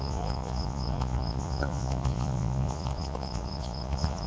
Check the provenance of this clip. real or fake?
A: fake